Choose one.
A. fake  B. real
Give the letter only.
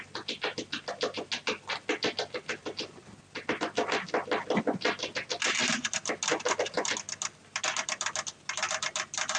B